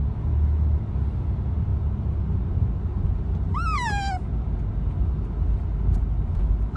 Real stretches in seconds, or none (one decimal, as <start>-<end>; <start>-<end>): 0.0-6.8

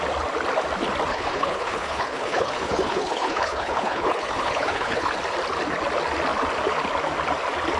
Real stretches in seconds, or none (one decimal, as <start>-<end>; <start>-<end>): 0.0-1.1; 5.1-7.8

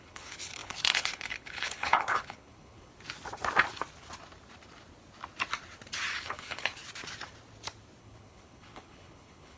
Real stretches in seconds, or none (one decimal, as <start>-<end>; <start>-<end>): 2.9-6.2; 6.7-8.0

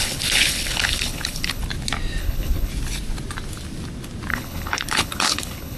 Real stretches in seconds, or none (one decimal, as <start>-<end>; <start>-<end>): 1.6-2.2; 2.7-4.3

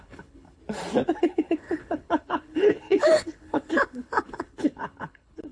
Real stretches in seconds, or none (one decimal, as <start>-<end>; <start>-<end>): 0.6-1.2

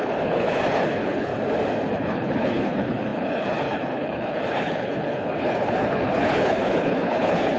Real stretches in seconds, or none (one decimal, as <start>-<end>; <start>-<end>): 1.3-1.9

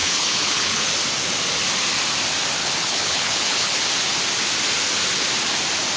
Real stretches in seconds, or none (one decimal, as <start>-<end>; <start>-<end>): 0.9-2.6; 3.8-6.0